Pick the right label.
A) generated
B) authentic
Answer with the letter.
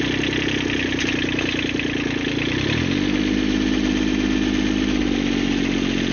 B